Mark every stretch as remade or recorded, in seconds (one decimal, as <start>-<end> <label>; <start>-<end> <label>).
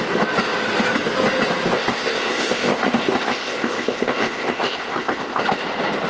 0.0-1.7 recorded; 1.7-5.4 remade; 5.4-6.1 recorded